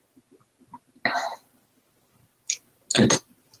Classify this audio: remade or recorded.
recorded